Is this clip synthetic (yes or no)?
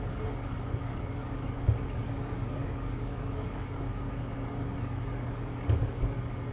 yes